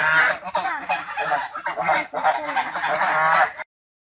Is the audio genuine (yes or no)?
yes